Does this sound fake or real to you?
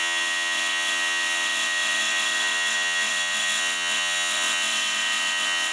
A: fake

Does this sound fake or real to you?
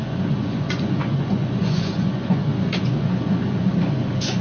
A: fake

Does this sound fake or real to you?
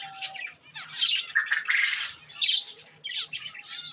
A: real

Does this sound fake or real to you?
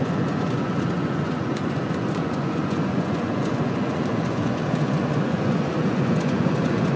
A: fake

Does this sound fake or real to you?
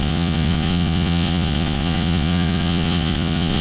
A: fake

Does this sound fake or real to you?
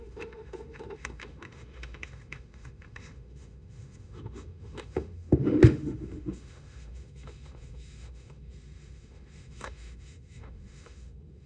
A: fake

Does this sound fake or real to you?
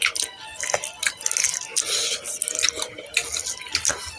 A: real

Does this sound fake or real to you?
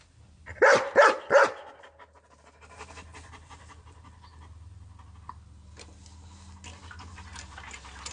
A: real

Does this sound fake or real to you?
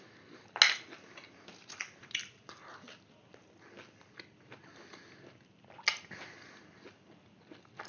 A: real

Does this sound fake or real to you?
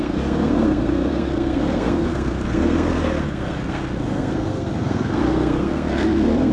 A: fake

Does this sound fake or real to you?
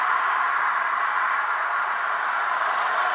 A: real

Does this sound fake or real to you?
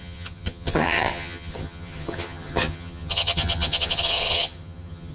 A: fake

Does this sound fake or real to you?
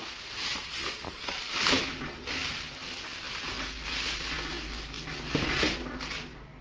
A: real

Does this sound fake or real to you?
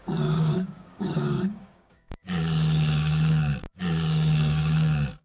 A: fake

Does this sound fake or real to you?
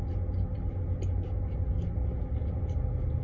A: real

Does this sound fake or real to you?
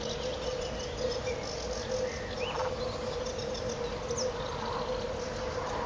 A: real